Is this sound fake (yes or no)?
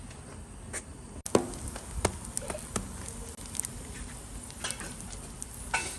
no